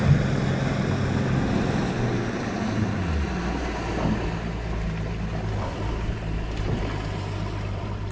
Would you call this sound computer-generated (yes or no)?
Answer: no